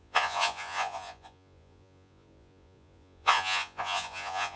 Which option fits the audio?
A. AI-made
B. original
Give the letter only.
A